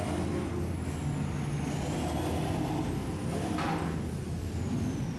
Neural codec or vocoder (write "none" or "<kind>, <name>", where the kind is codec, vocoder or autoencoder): none